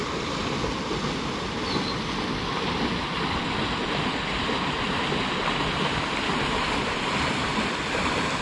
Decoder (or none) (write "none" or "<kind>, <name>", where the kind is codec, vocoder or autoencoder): none